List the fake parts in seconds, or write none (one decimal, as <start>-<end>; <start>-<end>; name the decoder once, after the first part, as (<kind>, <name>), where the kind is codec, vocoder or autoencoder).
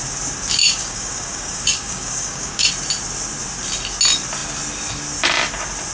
0.6-2.7 (codec, DAC)